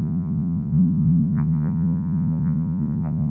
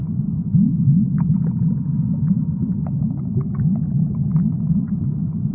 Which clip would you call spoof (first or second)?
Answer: first